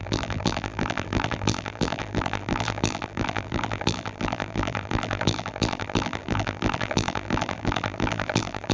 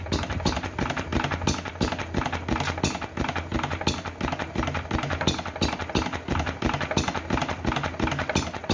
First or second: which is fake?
first